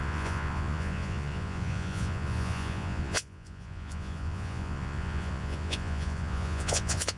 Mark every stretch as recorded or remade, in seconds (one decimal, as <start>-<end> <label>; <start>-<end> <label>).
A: 0.0-7.2 remade